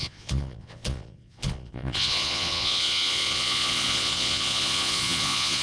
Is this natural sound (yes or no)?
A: no